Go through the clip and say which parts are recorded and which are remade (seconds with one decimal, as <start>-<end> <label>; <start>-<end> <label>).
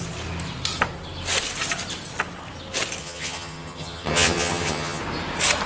0.0-3.0 recorded; 3.0-5.0 remade; 5.0-5.7 recorded